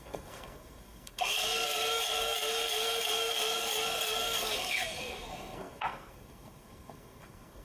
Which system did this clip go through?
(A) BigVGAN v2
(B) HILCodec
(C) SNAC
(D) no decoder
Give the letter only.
C